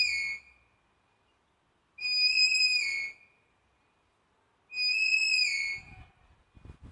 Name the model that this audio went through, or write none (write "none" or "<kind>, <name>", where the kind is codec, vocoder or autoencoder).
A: none